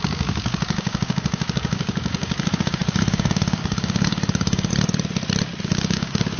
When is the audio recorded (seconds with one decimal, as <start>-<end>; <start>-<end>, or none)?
4.7-5.6